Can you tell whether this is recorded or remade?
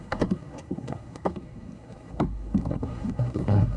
remade